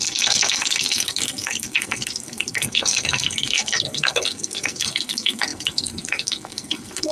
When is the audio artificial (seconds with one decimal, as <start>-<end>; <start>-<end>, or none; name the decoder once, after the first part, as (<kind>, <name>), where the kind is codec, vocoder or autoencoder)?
0.0-7.1 (codec, SNAC)